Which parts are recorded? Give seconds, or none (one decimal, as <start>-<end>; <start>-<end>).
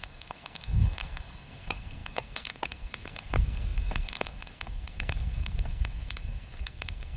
none